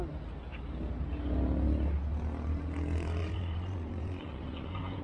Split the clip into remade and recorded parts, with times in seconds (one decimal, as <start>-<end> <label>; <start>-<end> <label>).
0.0-3.2 recorded; 3.2-5.0 remade